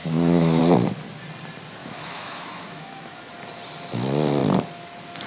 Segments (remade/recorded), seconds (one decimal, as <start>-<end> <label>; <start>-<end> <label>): 0.0-0.6 remade; 0.6-1.8 recorded; 1.8-3.2 remade; 3.2-5.3 recorded